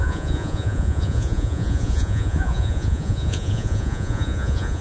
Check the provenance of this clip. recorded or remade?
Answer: remade